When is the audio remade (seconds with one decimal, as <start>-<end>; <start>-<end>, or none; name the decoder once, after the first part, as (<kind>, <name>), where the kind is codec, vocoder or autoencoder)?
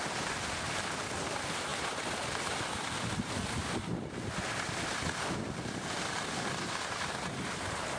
none